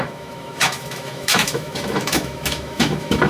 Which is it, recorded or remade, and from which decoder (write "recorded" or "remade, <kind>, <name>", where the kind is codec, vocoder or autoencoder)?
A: remade, autoencoder, DAC-VAE